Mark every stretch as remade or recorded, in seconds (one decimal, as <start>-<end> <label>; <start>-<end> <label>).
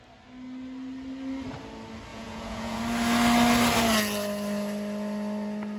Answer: 0.0-2.1 recorded; 2.1-2.8 remade; 2.8-5.8 recorded